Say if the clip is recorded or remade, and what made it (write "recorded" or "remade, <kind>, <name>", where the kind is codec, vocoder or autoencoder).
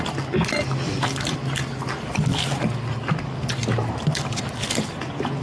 recorded